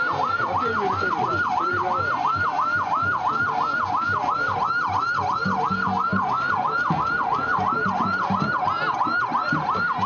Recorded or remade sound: recorded